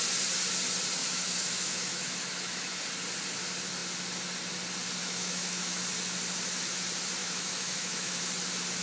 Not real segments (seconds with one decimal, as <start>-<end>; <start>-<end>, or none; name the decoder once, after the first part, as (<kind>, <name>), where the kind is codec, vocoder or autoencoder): 1.0-2.8 (autoencoder, DAC-VAE); 5.0-5.8; 7.2-8.2